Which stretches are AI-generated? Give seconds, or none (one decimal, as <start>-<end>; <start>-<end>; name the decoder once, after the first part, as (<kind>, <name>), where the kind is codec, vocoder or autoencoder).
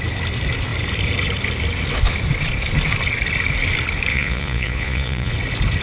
4.1-5.3 (vocoder, Vocos)